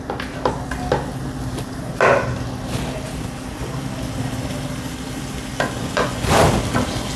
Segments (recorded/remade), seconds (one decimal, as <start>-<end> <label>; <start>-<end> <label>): 0.0-5.8 recorded; 5.8-6.3 remade; 6.3-7.2 recorded